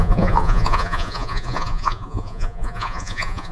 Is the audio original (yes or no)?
no